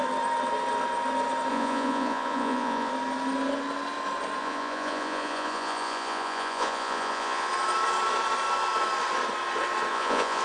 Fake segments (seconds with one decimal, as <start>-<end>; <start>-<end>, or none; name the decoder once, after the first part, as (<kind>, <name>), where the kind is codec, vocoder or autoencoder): 1.5-2.9 (vocoder, Vocos); 4.4-7.5; 9.9-10.4